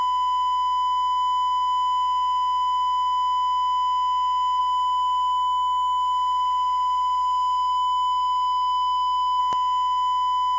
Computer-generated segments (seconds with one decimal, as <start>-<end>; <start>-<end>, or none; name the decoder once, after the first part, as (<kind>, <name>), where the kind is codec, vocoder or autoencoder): 4.6-9.4 (autoencoder, DAC-VAE)